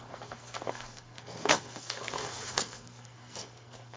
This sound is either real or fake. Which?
fake